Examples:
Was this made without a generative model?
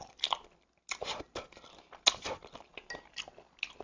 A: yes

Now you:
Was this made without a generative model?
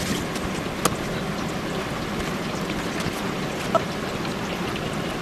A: yes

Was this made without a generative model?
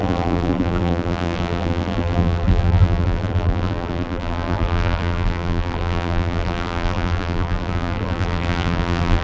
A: no